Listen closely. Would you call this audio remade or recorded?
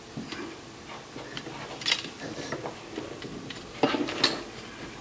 recorded